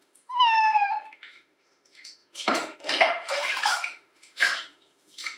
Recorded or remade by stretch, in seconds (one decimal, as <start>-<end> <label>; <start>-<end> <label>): 0.0-5.4 remade